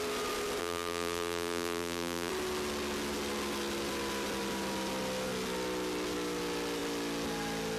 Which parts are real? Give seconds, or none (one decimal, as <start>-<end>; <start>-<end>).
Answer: 0.0-0.6; 2.3-7.8

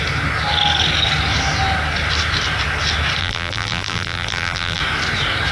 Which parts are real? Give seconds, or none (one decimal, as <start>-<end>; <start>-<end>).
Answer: 0.0-3.2; 4.8-5.5

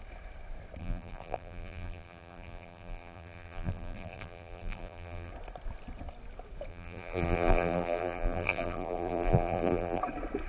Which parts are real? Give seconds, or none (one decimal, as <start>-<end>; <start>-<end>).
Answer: 0.0-0.8; 5.3-6.7; 10.0-10.5

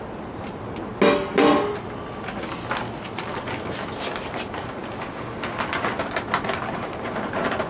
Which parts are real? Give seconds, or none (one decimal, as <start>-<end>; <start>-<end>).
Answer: 0.9-3.9; 4.8-6.8

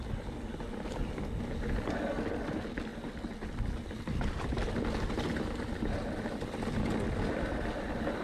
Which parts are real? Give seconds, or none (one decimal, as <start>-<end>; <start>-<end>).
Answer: 0.0-8.2